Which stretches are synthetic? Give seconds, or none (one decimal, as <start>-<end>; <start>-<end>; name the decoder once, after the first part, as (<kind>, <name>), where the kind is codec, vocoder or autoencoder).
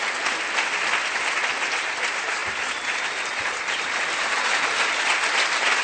none